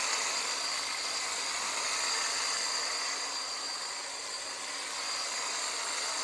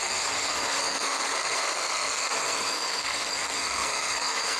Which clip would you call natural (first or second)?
first